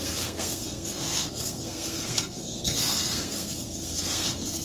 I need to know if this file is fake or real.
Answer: fake